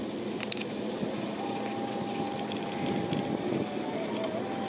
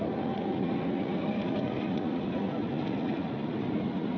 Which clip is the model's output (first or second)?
second